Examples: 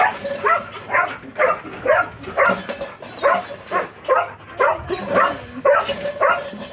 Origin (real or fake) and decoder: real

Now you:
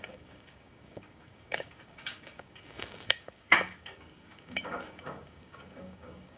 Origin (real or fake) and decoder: fake, codec, DAC